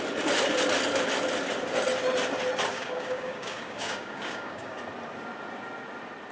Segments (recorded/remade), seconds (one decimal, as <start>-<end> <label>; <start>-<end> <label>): 0.0-2.7 recorded; 2.7-4.8 remade; 4.8-6.3 recorded